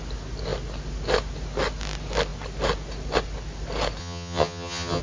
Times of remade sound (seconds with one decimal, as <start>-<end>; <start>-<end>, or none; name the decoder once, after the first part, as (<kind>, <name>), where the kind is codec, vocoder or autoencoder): 4.0-5.0 (vocoder, HiFi-GAN)

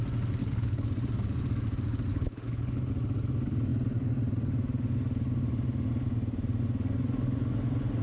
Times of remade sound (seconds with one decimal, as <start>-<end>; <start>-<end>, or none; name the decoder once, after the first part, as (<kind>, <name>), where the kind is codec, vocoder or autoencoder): 0.4-0.9 (codec, HILCodec); 2.1-2.9

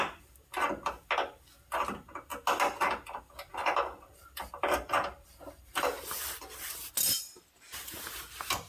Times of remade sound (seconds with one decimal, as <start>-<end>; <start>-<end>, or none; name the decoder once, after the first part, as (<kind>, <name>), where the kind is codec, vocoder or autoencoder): 3.6-6.7 (vocoder, BigVGAN v2)

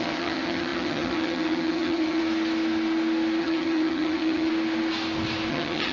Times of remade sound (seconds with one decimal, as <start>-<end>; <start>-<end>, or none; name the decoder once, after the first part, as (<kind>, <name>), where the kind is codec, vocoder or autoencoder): 0.0-2.2 (vocoder, HiFi-GAN); 3.4-4.5; 5.5-5.9

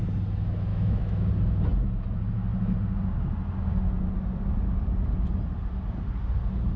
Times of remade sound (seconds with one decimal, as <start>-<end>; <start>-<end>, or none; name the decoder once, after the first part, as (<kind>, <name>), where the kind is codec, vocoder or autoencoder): 0.7-1.3 (autoencoder, DAC-VAE)